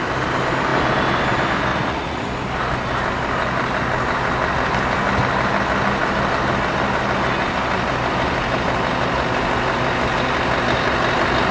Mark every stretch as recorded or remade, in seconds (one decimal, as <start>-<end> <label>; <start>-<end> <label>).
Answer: 0.0-1.7 recorded; 1.7-2.3 remade; 2.3-11.5 recorded